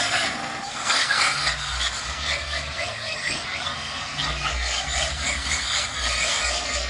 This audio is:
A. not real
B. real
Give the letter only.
A